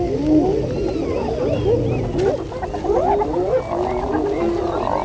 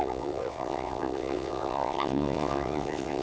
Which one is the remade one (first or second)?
second